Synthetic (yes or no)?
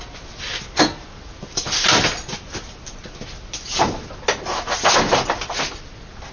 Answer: no